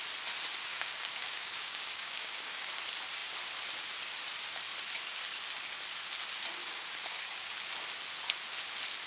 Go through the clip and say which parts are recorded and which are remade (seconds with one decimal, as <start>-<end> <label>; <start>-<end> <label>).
0.0-0.7 recorded; 0.7-2.7 remade; 2.7-6.6 recorded; 6.6-7.5 remade; 7.5-9.1 recorded